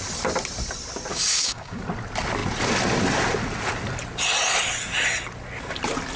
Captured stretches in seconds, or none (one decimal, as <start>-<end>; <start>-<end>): 0.0-1.1; 1.8-6.2